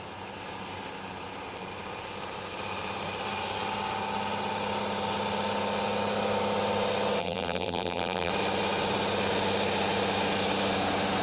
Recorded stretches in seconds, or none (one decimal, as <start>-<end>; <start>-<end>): 0.0-7.2; 8.3-11.2